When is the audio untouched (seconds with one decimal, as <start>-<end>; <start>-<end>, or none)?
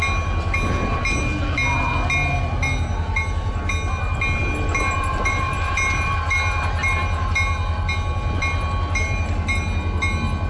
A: 0.0-10.5